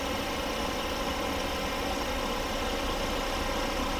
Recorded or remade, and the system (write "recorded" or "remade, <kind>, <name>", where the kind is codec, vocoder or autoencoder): recorded